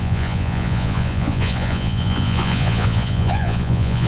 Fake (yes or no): yes